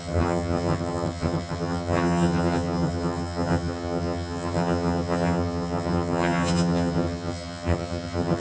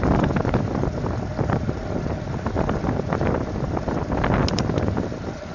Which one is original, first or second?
second